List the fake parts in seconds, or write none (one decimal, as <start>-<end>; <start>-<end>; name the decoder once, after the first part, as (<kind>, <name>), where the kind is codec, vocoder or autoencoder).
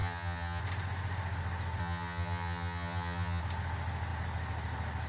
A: 0.0-0.6 (vocoder, HiFi-GAN); 1.8-3.4